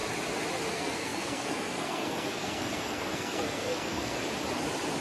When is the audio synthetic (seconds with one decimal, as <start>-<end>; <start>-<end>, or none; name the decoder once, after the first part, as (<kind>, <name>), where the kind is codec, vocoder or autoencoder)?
0.7-4.2 (codec, SNAC)